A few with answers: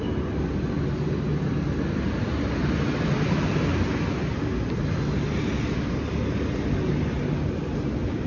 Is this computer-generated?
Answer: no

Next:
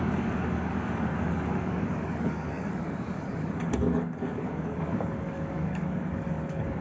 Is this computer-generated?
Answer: yes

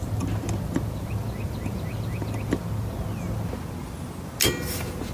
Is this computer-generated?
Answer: no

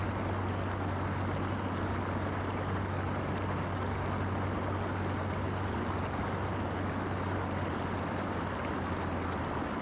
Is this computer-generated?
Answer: no